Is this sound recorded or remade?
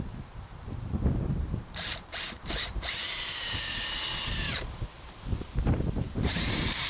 remade